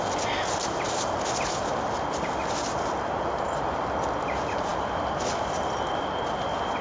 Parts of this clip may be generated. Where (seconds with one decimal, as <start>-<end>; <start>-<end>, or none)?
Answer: none